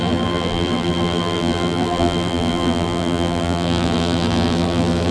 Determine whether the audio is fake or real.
fake